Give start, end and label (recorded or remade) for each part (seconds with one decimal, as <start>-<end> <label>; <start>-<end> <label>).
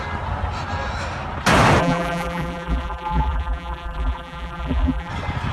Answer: 0.0-1.8 recorded; 1.8-5.1 remade; 5.1-5.5 recorded